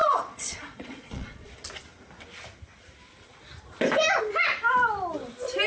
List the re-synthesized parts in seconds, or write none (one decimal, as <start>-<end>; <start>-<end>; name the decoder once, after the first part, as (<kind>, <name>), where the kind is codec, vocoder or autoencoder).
0.0-1.5 (vocoder, Vocos)